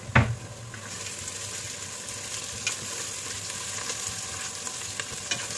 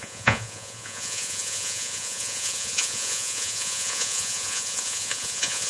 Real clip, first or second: first